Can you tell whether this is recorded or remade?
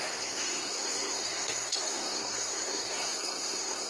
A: remade